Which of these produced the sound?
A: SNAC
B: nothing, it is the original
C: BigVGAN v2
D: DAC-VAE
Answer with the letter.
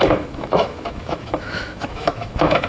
D